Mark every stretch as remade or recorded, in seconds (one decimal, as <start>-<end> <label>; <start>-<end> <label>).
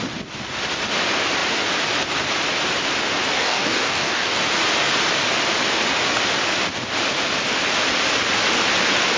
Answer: 0.0-3.3 recorded; 3.3-4.4 remade; 4.4-9.2 recorded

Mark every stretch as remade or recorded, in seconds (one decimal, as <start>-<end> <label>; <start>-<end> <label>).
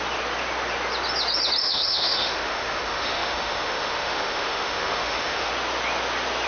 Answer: 0.0-1.6 recorded; 1.6-5.5 remade; 5.5-6.5 recorded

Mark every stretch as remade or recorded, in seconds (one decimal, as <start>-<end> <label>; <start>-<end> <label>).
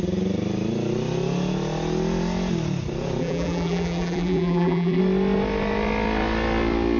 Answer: 0.0-3.2 recorded; 3.2-5.0 remade; 5.0-7.0 recorded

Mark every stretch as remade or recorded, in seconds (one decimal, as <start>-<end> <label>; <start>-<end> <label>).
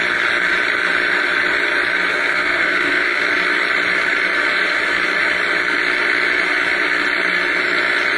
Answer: 0.0-2.1 recorded; 2.1-3.2 remade; 3.2-8.2 recorded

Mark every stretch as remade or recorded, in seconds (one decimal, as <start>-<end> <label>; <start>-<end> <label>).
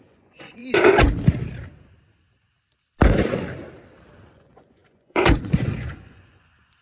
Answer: 0.0-0.6 remade; 0.6-4.3 recorded; 4.3-6.8 remade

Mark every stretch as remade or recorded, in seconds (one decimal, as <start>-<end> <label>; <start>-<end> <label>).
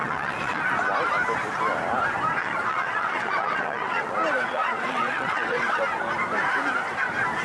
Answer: 0.0-0.6 remade; 0.6-2.4 recorded; 2.4-4.1 remade; 4.1-4.5 recorded; 4.5-5.8 remade; 5.8-7.4 recorded